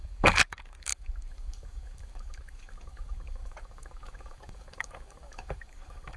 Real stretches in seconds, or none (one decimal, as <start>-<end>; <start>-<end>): none

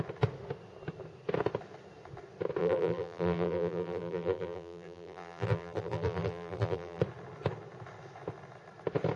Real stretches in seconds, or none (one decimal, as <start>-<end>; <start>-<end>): 0.0-2.6; 7.0-9.2

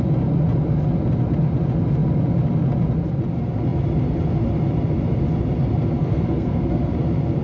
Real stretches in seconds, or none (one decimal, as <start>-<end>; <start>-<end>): 0.0-6.0; 6.9-7.4

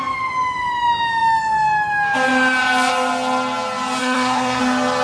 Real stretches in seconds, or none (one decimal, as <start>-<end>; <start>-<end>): 0.0-4.0; 4.6-5.0